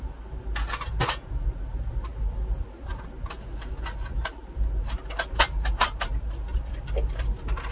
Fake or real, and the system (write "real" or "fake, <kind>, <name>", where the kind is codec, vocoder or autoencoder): real